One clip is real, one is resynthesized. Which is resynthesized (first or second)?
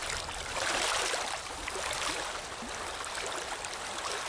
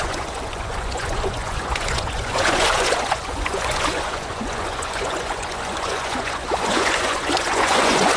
second